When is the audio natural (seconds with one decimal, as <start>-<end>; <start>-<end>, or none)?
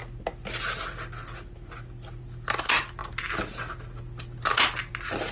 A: 0.0-5.3